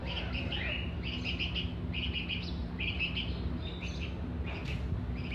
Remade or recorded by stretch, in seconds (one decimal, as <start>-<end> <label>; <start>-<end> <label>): 0.0-0.9 remade; 0.9-2.6 recorded; 2.6-3.7 remade; 3.7-5.3 recorded